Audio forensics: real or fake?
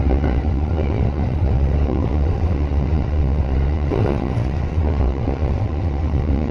fake